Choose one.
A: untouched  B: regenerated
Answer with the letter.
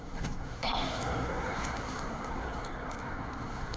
B